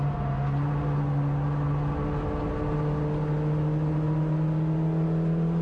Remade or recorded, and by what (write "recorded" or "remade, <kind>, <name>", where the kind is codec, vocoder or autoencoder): recorded